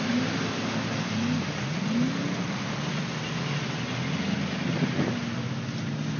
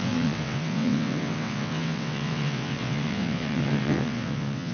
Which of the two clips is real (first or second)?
first